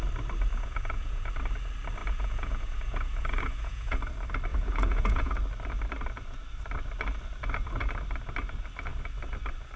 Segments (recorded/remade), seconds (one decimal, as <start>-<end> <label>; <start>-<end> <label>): 0.0-0.5 recorded; 0.5-1.3 remade; 1.3-2.0 recorded; 2.0-4.0 remade; 4.0-4.5 recorded; 4.5-5.3 remade; 5.3-9.8 recorded